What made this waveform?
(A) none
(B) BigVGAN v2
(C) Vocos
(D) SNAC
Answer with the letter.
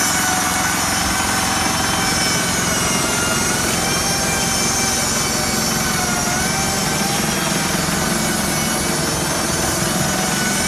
A